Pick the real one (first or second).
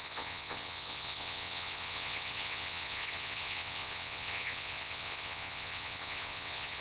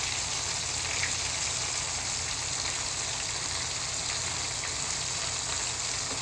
second